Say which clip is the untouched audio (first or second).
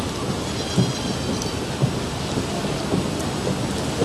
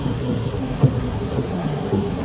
first